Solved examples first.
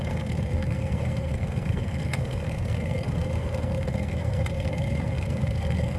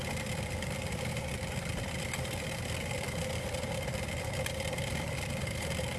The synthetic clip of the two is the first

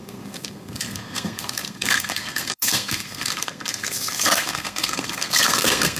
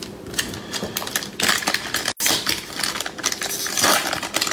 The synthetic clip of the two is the first